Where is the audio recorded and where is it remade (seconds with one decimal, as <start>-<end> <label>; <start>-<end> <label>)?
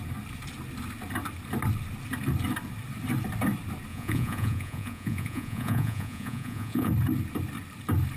0.0-3.9 recorded; 3.9-6.9 remade; 6.9-8.2 recorded